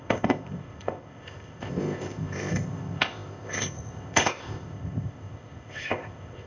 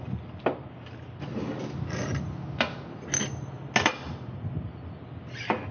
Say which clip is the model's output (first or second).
first